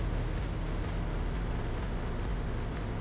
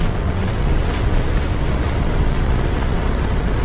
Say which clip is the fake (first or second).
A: second